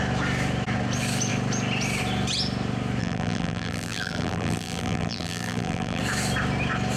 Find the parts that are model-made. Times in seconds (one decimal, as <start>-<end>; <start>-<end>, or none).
3.0-6.0